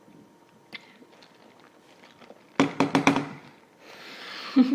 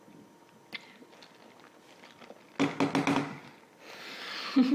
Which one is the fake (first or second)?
first